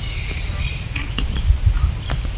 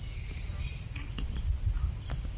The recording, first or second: second